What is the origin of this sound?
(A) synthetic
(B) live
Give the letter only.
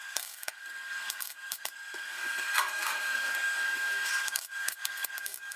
A